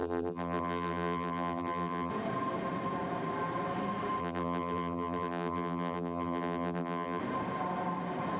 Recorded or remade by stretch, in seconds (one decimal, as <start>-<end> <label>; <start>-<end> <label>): 0.0-2.1 remade; 2.1-4.2 recorded; 4.2-7.2 remade; 7.2-8.4 recorded